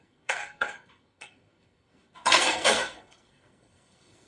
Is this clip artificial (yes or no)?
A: yes